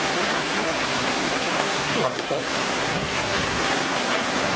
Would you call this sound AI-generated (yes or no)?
yes